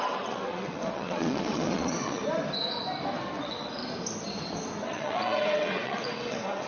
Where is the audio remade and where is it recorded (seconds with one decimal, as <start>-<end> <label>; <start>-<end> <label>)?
0.0-2.2 remade; 2.2-3.4 recorded; 3.4-3.8 remade; 3.8-4.8 recorded; 4.8-6.7 remade